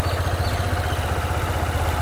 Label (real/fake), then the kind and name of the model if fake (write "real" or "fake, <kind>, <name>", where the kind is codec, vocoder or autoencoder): real